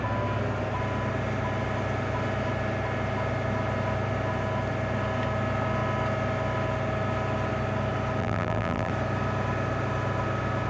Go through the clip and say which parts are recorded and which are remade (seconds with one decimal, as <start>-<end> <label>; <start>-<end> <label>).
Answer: 0.0-8.2 recorded; 8.2-8.9 remade; 8.9-10.7 recorded